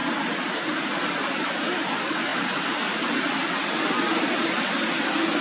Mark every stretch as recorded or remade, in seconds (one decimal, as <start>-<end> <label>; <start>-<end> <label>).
0.0-5.4 recorded